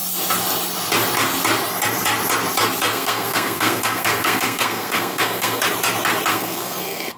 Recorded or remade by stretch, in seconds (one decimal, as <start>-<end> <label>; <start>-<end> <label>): 0.0-2.9 recorded; 2.9-5.6 remade; 5.6-6.3 recorded; 6.3-7.2 remade